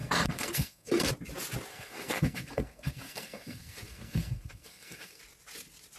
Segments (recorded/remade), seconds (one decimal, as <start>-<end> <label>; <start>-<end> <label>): 0.0-1.1 remade; 1.1-1.7 recorded; 1.7-5.2 remade; 5.2-6.0 recorded